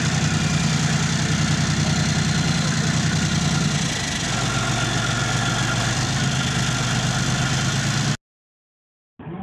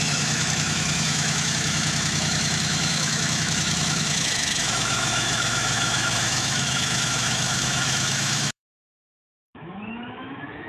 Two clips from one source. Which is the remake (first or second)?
second